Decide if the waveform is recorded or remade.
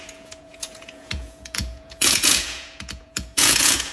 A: remade